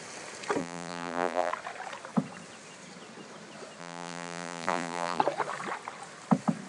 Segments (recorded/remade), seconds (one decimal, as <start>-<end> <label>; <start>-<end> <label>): 0.0-0.6 recorded; 0.6-1.5 remade; 1.5-3.8 recorded; 3.8-5.2 remade; 5.2-6.7 recorded